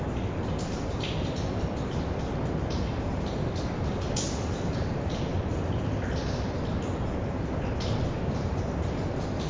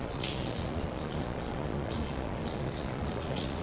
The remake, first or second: second